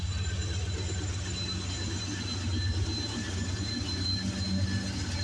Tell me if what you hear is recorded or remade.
recorded